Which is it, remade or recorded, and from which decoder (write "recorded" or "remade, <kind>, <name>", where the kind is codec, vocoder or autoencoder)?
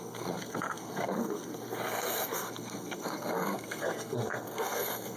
remade, codec, SNAC